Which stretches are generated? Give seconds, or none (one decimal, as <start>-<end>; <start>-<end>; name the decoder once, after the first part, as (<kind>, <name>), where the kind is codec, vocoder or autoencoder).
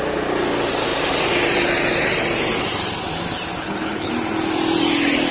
3.6-4.1 (codec, HILCodec)